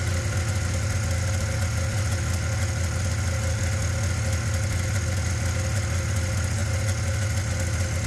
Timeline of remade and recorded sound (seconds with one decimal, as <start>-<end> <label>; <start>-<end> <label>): 0.0-8.1 recorded